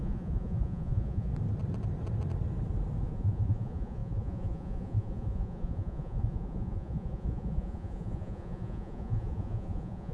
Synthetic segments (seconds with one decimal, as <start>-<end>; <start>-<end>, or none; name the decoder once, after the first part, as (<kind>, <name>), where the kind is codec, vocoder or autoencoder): 0.0-1.3 (vocoder, Vocos); 3.0-10.1